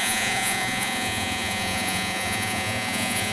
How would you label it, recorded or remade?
remade